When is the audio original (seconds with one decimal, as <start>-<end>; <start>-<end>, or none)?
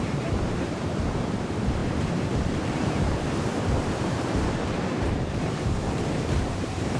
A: none